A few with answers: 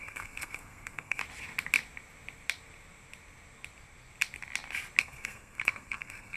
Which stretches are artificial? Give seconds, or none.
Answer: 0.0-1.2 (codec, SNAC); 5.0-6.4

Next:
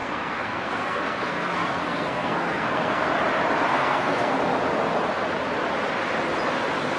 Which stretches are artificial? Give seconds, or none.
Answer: 0.0-3.1 (codec, SNAC); 3.7-4.4

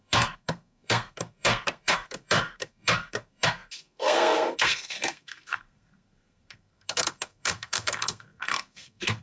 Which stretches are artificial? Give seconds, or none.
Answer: 0.0-9.2 (codec, SNAC)

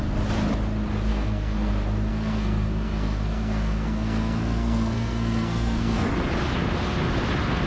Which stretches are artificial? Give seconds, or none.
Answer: 1.1-1.7 (codec, SNAC); 2.1-6.1

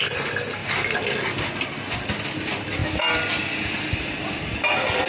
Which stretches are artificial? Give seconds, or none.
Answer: none

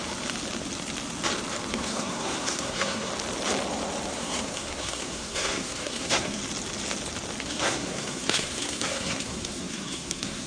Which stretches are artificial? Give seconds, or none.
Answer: 1.7-3.1 (codec, SNAC); 4.1-6.4; 7.4-10.5

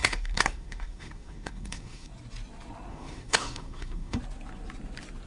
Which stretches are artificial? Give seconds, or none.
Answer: 0.0-2.1 (codec, SNAC); 2.9-4.2

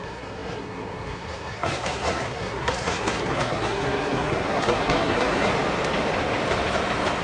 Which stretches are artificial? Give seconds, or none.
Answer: 0.0-5.5 (codec, SNAC)